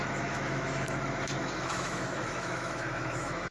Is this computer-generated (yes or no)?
yes